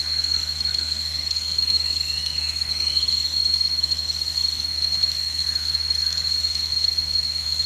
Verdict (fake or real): fake